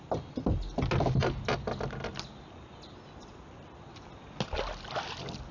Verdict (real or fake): real